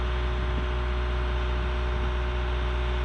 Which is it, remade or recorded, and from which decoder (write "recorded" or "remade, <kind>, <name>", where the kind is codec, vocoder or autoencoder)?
recorded